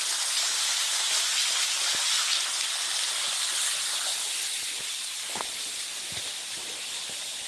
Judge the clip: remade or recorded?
recorded